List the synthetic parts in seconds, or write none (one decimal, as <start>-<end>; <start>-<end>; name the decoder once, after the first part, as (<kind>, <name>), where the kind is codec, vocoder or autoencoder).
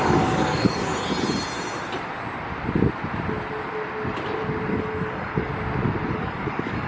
0.0-0.9 (codec, DAC); 4.7-5.5; 6.1-6.9